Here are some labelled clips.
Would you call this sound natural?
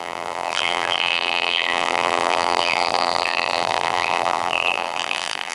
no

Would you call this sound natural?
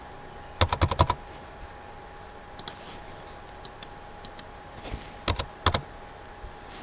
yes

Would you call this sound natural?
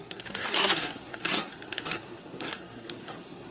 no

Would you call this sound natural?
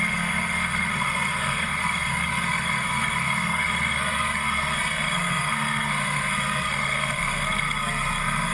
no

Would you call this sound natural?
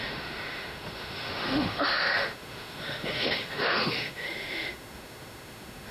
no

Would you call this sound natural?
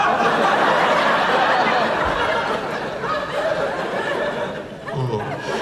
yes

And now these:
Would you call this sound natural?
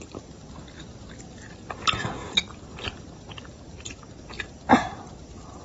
yes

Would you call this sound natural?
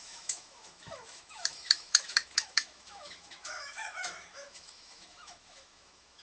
no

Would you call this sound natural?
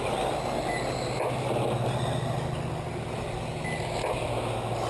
yes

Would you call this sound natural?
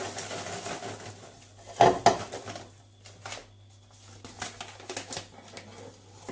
yes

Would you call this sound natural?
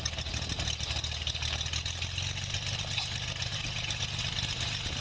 yes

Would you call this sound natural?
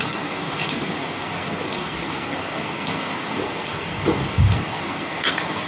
no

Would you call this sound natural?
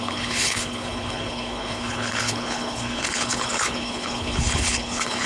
no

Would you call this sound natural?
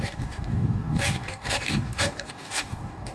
no